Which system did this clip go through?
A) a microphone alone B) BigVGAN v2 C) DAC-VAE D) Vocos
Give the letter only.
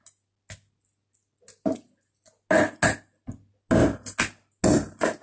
A